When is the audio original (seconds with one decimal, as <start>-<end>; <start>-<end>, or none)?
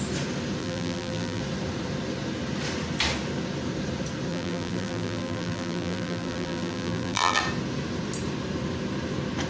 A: 0.0-0.6; 1.4-4.3; 7.4-9.5